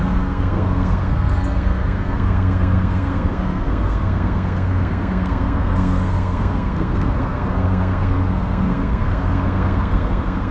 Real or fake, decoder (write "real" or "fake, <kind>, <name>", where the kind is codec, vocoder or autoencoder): fake, codec, SNAC